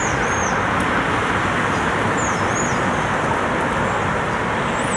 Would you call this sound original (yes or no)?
yes